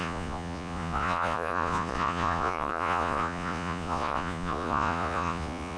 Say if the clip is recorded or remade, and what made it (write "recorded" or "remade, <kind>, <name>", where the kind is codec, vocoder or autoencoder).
remade, vocoder, Vocos